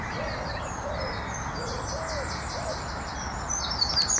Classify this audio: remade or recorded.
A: recorded